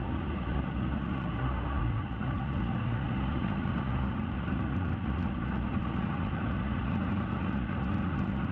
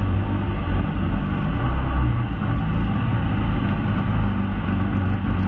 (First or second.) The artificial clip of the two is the first